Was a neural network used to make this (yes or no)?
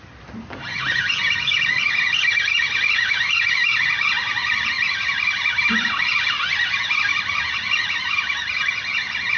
no